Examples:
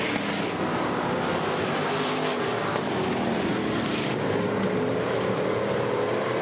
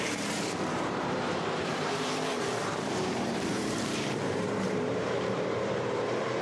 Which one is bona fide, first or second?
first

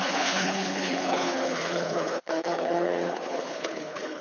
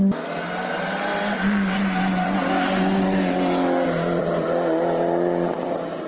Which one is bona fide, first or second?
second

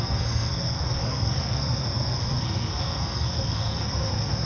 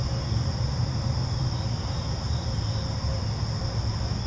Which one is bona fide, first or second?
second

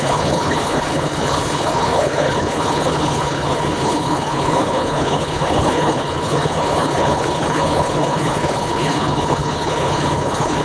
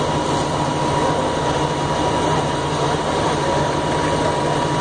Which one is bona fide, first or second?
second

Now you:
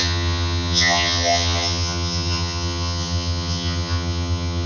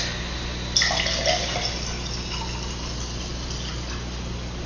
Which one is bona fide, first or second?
second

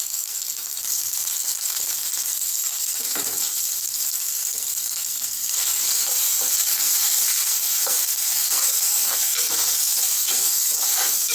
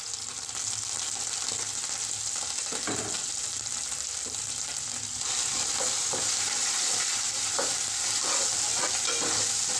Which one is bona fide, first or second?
second